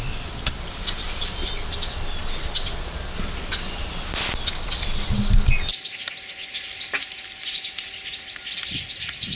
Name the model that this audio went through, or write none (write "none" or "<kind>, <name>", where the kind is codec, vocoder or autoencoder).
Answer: none